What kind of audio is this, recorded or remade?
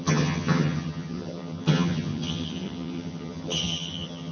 remade